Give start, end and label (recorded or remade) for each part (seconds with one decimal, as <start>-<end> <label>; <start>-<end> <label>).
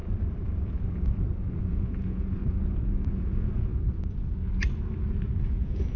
0.0-1.6 recorded; 1.6-2.4 remade; 2.4-3.1 recorded; 3.1-3.7 remade; 3.7-5.4 recorded; 5.4-6.0 remade